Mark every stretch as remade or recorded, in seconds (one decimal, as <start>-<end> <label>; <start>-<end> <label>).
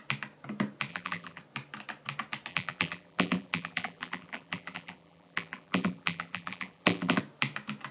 0.0-0.9 recorded; 0.9-1.4 remade; 1.4-2.5 recorded; 2.5-7.2 remade; 7.2-7.9 recorded